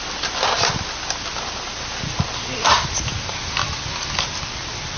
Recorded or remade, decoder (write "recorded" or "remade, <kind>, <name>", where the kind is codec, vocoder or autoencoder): recorded